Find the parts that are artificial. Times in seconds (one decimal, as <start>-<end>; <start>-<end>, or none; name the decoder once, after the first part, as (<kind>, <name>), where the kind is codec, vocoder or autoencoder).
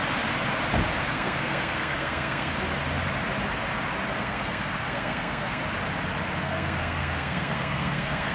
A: 1.0-2.5 (codec, SNAC); 4.2-5.6; 6.4-8.3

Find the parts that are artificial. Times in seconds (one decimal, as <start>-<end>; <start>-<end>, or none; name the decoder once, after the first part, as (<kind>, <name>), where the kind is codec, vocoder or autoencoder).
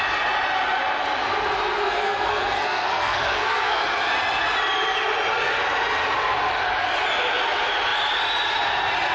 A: 1.8-3.8 (codec, SNAC)